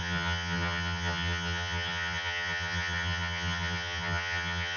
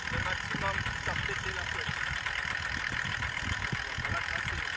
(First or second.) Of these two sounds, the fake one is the first